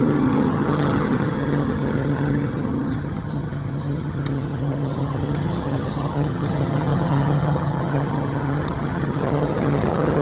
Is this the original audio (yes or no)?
no